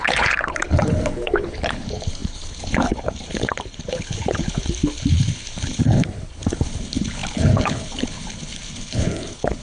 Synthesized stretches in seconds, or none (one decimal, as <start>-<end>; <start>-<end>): 0.0-9.6